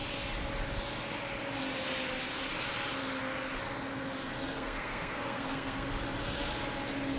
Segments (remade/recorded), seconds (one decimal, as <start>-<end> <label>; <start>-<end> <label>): 0.0-4.2 recorded; 4.2-5.9 remade; 5.9-7.2 recorded